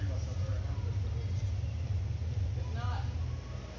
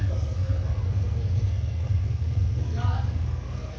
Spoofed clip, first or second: second